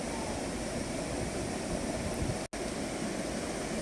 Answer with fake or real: real